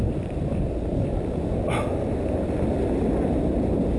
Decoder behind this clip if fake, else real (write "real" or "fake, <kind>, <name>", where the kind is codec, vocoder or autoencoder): fake, vocoder, BigVGAN v2